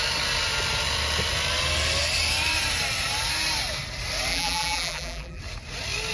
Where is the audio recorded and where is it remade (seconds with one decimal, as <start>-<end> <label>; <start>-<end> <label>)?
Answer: 0.0-4.3 recorded; 4.3-5.4 remade; 5.4-6.1 recorded